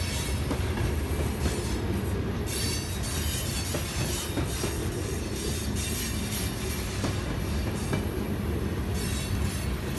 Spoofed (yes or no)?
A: no